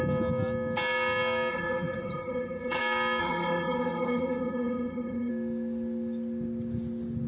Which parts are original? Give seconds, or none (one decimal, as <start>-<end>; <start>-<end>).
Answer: 0.0-1.5; 2.8-3.2; 5.3-7.3